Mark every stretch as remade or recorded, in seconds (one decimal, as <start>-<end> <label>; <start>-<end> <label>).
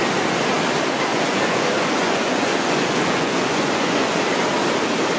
0.0-1.1 recorded; 1.1-4.2 remade; 4.2-5.2 recorded